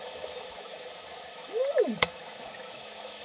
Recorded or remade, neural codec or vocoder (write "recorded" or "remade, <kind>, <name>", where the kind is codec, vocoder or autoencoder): remade, autoencoder, DAC-VAE